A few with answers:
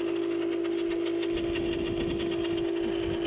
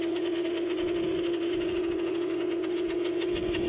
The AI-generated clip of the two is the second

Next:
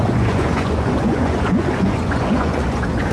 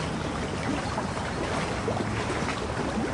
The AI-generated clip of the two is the first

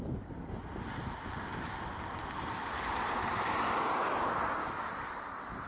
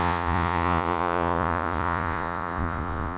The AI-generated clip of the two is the second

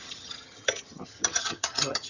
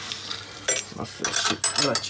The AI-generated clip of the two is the first